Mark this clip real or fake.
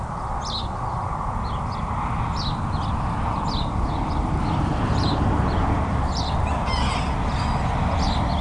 real